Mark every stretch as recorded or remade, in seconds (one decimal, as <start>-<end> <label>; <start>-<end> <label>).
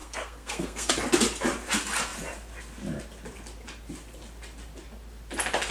0.0-0.9 remade; 0.9-5.7 recorded